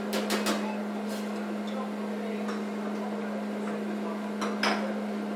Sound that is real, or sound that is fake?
real